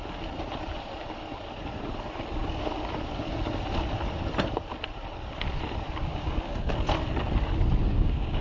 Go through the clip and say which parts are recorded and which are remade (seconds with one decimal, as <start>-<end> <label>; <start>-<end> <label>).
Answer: 0.0-6.1 recorded; 6.1-6.7 remade; 6.7-7.8 recorded; 7.8-8.4 remade